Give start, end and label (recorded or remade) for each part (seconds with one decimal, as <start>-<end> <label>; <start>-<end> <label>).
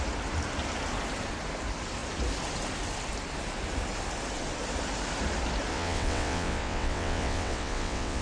0.0-5.7 recorded; 5.7-8.2 remade